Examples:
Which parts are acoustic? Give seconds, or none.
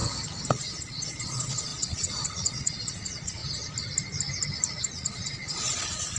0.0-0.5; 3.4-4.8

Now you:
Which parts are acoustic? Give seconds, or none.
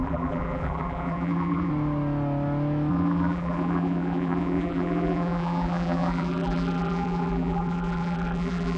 1.7-2.9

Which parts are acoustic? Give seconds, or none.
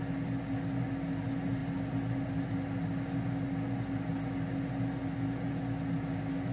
0.0-6.5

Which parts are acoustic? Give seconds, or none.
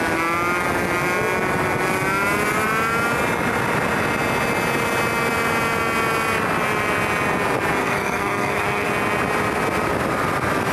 0.0-7.8; 8.9-10.7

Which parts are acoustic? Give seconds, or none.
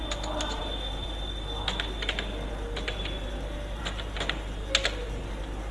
0.0-5.7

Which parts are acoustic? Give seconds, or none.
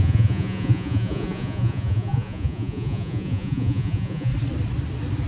4.3-5.3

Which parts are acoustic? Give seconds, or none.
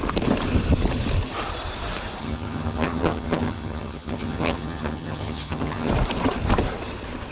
0.0-2.2; 5.9-7.3